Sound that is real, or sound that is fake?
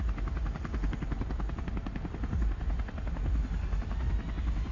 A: real